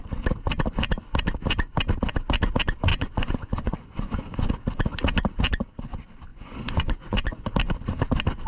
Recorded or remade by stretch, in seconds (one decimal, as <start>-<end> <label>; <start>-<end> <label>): 0.0-2.9 recorded; 2.9-4.5 remade; 4.5-6.3 recorded; 6.3-7.5 remade; 7.5-8.5 recorded